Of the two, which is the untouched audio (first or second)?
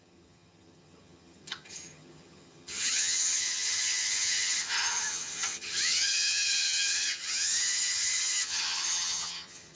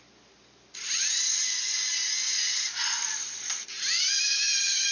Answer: second